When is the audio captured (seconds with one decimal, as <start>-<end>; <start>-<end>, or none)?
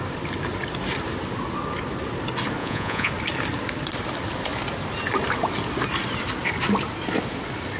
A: 0.0-2.6; 3.1-7.8